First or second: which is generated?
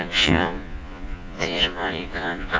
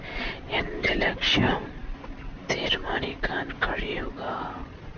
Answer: first